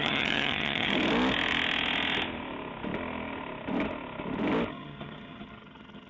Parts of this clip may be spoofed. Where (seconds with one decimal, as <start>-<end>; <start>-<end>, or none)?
0.0-1.0; 4.7-6.1